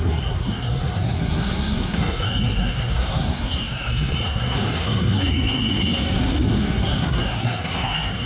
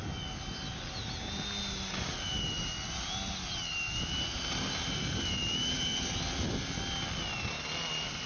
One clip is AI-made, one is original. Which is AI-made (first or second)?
first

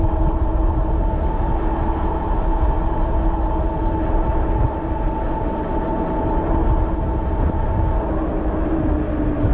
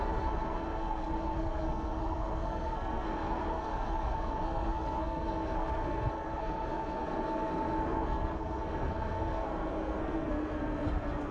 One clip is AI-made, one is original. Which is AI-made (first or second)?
second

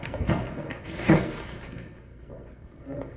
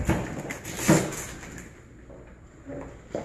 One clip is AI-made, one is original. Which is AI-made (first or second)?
first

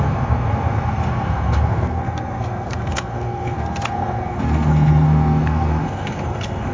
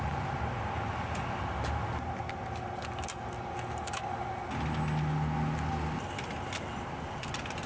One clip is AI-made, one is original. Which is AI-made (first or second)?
first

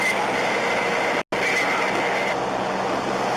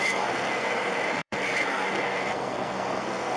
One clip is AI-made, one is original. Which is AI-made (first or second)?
second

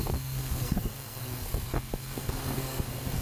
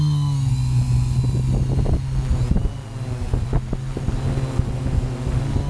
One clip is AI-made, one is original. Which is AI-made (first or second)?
first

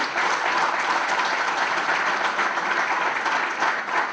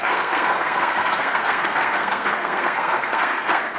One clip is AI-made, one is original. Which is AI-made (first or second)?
second